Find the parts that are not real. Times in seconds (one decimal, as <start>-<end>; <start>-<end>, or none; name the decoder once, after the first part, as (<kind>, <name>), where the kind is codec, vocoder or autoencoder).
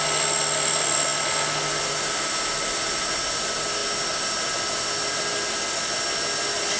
none